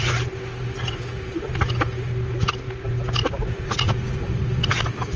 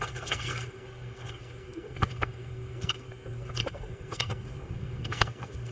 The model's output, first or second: second